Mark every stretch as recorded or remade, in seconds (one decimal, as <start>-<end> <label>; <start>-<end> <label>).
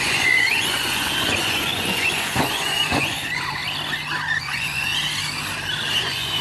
0.0-3.6 remade; 3.6-4.4 recorded; 4.4-4.9 remade; 4.9-6.0 recorded; 6.0-6.4 remade